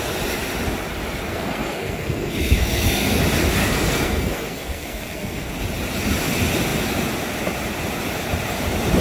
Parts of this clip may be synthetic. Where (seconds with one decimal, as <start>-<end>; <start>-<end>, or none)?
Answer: 1.3-3.2; 3.6-5.5